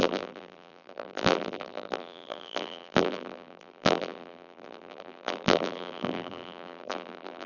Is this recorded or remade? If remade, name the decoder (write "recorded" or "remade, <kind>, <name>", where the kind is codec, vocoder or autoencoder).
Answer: remade, vocoder, BigVGAN v2